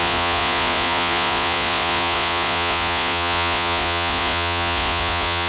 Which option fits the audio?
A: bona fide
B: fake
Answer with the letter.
B